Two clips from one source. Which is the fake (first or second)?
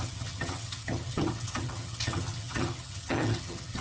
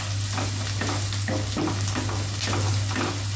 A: first